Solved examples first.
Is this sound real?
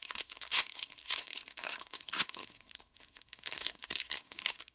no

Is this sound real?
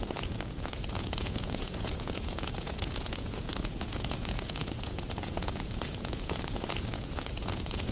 no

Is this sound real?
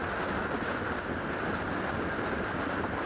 yes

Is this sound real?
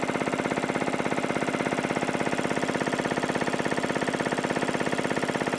yes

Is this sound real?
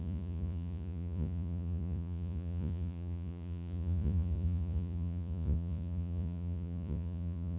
no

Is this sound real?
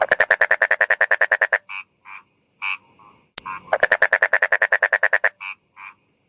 yes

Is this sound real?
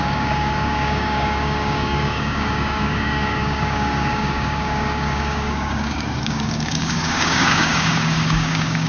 no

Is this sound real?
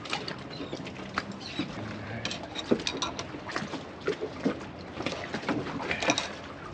yes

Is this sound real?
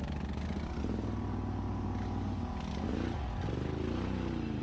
yes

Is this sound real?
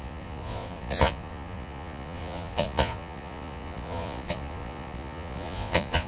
no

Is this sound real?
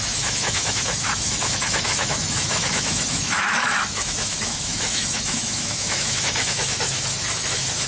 no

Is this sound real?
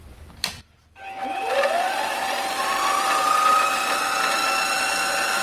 no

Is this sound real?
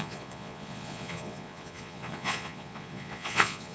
no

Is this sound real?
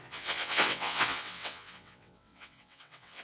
no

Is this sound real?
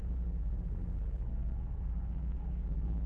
no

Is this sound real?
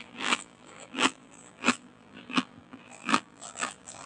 no